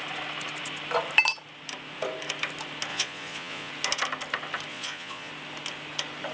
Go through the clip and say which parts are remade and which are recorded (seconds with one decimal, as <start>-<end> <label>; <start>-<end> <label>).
0.0-2.9 recorded; 2.9-3.7 remade; 3.7-4.7 recorded; 4.7-5.3 remade; 5.3-6.3 recorded